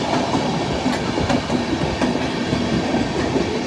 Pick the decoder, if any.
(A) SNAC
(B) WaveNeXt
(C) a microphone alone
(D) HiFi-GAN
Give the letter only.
C